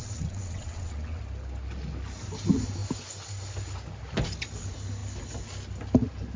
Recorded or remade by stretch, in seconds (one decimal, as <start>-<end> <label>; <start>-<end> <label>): 0.0-1.2 remade; 1.2-6.4 recorded